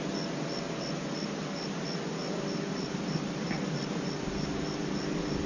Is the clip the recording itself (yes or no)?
yes